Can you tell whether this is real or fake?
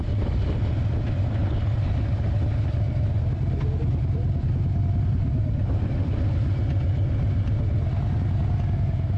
real